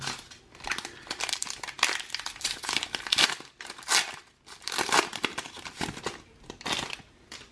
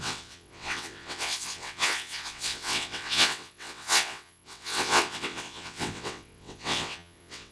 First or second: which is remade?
second